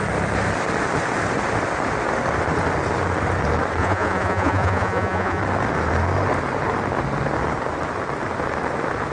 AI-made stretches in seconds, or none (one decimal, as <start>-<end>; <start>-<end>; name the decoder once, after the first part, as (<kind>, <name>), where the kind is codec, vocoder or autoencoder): 3.8-5.4 (vocoder, Vocos)